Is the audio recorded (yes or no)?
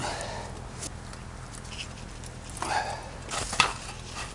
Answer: yes